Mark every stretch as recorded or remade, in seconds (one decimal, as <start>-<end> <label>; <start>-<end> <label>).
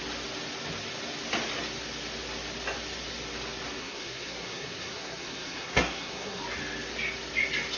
0.0-3.8 recorded; 3.8-6.4 remade; 6.4-7.8 recorded